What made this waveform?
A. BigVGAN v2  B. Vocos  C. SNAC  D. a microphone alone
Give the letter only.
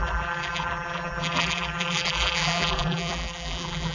A